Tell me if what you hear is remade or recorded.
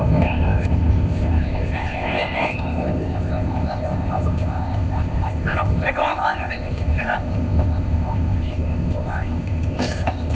remade